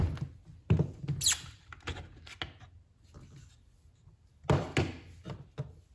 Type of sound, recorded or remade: recorded